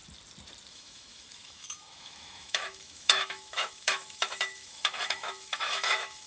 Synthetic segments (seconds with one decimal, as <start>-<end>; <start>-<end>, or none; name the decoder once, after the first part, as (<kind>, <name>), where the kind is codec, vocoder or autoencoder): 0.7-6.3 (autoencoder, DAC-VAE)